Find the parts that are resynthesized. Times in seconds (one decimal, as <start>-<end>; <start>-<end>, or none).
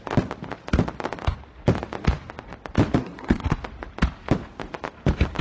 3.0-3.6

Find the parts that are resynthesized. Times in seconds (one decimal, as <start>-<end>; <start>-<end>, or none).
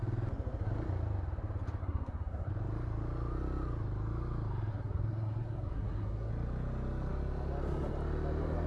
1.8-2.5; 4.7-6.3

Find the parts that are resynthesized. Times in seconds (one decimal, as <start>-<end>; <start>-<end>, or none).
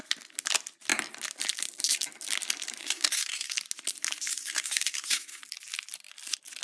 2.8-3.5; 4.3-5.4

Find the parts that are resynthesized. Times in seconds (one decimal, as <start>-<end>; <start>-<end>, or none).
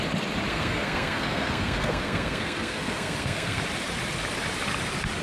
0.5-3.6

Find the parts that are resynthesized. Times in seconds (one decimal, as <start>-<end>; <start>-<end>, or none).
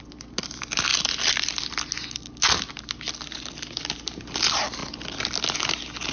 none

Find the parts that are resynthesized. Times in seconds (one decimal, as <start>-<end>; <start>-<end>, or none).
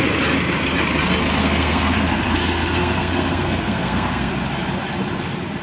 1.4-4.3